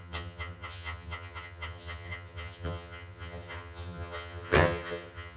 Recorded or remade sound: remade